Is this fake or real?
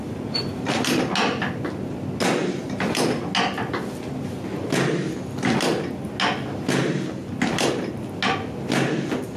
real